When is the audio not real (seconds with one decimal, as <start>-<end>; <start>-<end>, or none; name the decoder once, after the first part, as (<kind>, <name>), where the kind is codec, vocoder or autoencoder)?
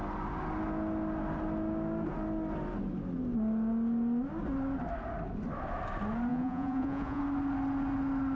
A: 6.3-7.2 (vocoder, Vocos)